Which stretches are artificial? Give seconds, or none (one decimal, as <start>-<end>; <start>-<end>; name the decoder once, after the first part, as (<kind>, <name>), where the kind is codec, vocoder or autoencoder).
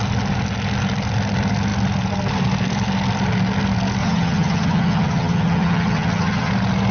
4.0-6.5 (vocoder, HiFi-GAN)